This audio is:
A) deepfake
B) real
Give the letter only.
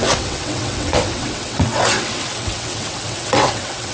A